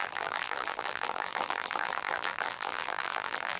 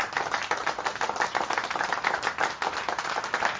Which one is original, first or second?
second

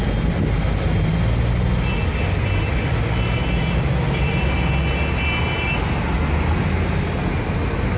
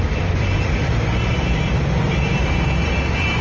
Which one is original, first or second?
first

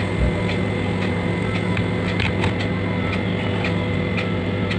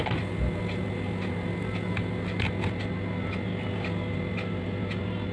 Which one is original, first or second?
second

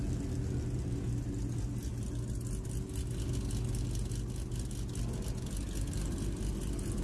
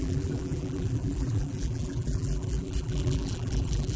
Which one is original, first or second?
first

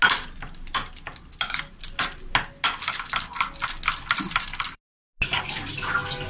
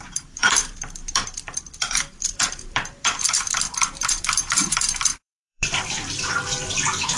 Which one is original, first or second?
first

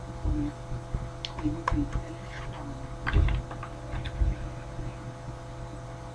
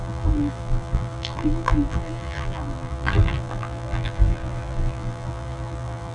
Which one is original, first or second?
first